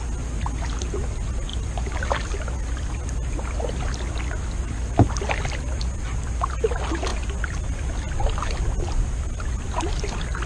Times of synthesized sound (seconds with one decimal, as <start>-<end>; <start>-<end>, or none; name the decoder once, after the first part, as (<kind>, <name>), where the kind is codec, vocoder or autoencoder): none